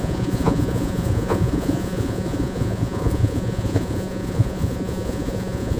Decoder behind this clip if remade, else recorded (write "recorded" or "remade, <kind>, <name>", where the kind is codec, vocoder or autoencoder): remade, vocoder, Vocos